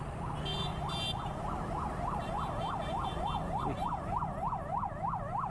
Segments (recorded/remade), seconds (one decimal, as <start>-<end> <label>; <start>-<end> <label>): 0.0-5.5 recorded